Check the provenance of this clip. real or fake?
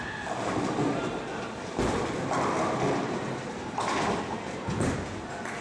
real